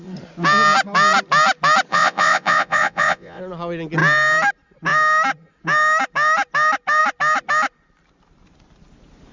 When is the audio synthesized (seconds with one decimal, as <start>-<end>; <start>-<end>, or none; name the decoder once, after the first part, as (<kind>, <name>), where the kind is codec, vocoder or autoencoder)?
1.9-3.4 (vocoder, Vocos)